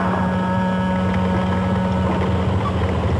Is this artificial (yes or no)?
no